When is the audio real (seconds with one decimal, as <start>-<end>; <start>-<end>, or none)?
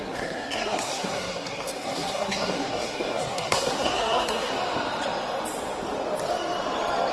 4.5-7.1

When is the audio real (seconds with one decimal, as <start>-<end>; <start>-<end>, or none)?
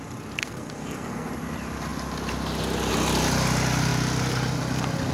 0.0-0.4; 1.3-5.1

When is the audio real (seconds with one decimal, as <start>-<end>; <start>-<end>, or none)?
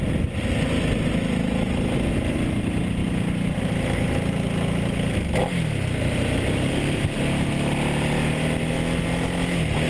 0.0-9.9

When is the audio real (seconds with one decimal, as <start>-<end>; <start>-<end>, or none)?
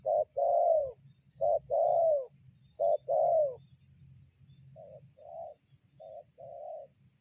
0.0-0.4; 0.9-7.2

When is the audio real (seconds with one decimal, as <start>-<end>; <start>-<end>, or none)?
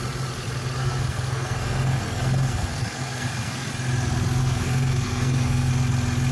0.0-0.8; 3.7-4.4; 5.7-6.3